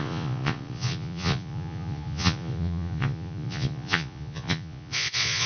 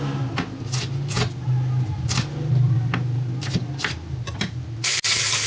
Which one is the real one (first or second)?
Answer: second